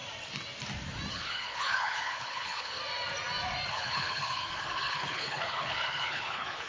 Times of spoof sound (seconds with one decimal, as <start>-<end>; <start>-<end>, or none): 1.1-2.8; 3.7-6.7